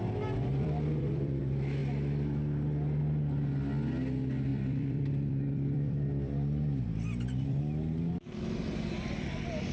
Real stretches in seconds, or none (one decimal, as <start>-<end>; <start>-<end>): 0.0-0.5; 1.4-4.5; 7.6-9.7